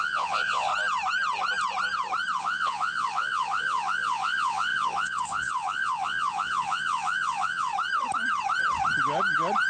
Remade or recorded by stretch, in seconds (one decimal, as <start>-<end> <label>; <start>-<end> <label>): 0.0-0.7 remade; 0.7-2.4 recorded; 2.4-7.7 remade; 7.7-9.7 recorded